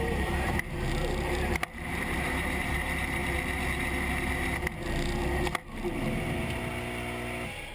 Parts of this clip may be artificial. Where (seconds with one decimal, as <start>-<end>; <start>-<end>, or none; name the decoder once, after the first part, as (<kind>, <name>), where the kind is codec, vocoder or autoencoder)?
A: 0.0-3.2 (vocoder, BigVGAN v2)